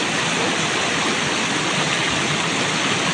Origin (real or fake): real